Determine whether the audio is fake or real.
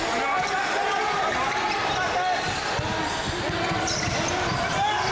real